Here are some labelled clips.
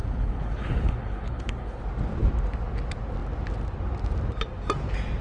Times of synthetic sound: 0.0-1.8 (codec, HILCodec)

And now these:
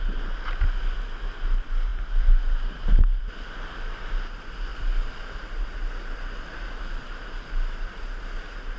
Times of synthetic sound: none

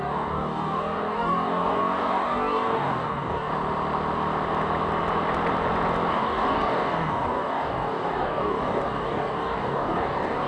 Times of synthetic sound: 0.0-3.5 (codec, DAC); 6.1-10.5

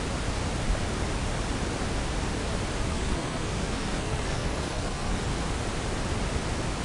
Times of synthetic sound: 2.9-5.2 (codec, SNAC)

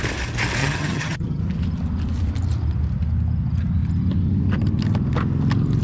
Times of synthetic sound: 0.6-1.4 (vocoder, HiFi-GAN)

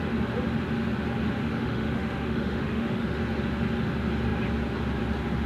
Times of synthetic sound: 1.4-3.2 (autoencoder, DAC-VAE)

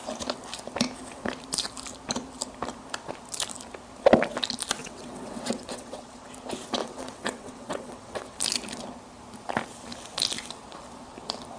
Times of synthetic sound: 4.8-6.3 (vocoder, WaveNeXt); 6.8-8.4